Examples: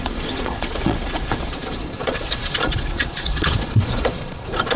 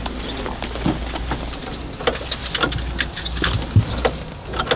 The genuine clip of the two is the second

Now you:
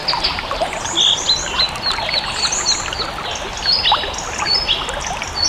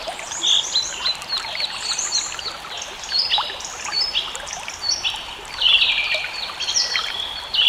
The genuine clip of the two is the first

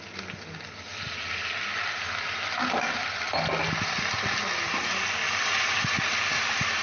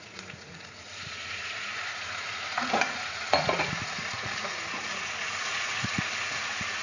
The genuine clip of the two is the first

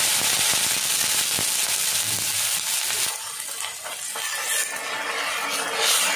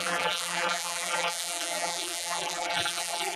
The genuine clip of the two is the first